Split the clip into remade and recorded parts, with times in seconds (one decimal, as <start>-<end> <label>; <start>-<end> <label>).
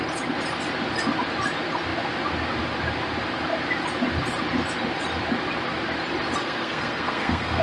0.0-6.4 recorded; 6.4-7.6 remade